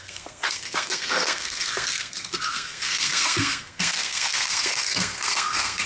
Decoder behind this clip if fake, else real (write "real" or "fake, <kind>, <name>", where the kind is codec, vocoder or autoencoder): fake, codec, SNAC